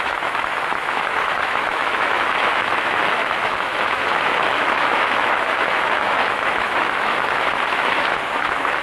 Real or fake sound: fake